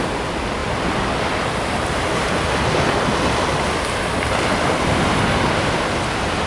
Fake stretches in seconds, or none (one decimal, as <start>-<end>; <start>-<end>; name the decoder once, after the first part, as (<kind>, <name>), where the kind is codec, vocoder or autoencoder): none